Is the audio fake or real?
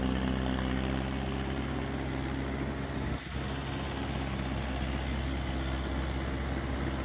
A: real